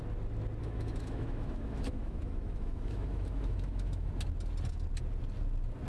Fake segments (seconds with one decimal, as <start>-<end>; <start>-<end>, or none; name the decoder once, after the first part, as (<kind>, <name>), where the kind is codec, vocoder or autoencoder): 0.6-4.1 (autoencoder, DAC-VAE)